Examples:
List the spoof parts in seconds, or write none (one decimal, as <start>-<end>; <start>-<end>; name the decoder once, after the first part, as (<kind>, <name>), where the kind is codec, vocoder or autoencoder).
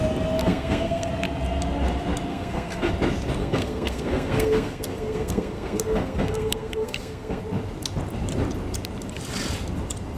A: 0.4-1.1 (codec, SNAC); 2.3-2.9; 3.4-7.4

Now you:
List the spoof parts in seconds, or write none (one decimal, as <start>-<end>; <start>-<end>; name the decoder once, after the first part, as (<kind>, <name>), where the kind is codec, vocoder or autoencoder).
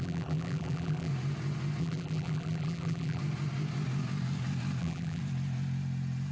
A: 0.0-1.1 (vocoder, BigVGAN v2); 1.8-3.2; 4.8-5.2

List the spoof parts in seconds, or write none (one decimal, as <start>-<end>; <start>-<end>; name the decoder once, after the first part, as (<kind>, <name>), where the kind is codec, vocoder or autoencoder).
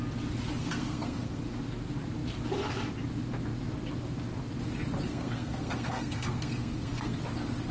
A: 0.6-1.4 (codec, SNAC); 5.1-7.2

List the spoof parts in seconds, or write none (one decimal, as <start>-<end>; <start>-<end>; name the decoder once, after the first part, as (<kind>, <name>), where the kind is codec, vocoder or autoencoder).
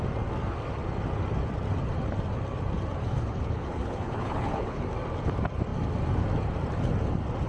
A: 3.0-4.8 (codec, HILCodec)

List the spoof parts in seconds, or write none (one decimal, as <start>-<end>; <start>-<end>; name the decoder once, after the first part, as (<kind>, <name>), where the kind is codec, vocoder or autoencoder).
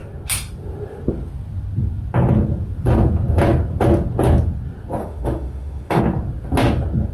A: 5.0-6.0 (autoencoder, DAC-VAE)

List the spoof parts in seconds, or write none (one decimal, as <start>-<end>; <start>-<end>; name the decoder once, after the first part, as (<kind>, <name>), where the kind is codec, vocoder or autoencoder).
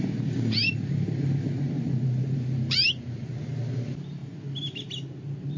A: 0.0-4.2 (vocoder, BigVGAN v2)